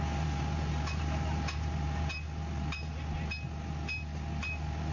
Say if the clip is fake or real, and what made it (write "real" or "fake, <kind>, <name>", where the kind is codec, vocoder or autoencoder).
real